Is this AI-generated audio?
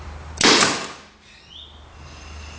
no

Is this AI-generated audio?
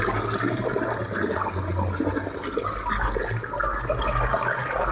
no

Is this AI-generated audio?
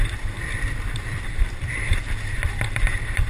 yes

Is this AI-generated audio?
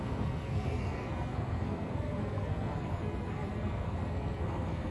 yes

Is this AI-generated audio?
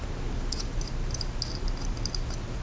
no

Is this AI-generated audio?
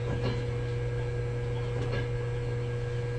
no